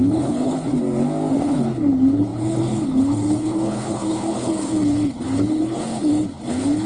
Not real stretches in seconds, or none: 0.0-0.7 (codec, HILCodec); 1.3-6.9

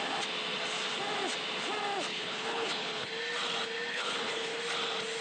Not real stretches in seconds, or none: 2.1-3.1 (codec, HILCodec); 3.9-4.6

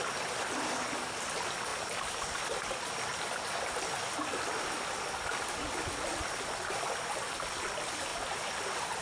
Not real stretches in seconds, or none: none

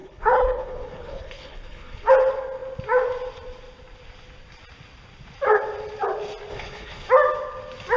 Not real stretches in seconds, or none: 0.0-2.1 (codec, HILCodec); 6.5-7.1